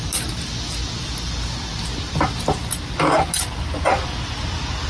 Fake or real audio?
real